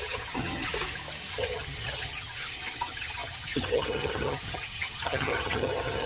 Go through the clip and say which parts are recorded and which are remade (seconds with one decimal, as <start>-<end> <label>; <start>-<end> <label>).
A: 0.0-0.7 remade; 0.7-1.3 recorded; 1.3-6.1 remade